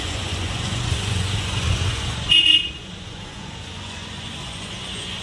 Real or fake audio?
fake